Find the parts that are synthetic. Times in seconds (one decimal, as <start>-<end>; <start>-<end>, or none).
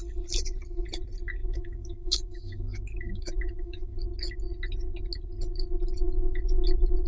1.4-4.0